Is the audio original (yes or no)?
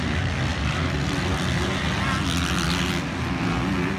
yes